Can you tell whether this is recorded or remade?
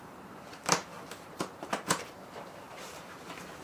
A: remade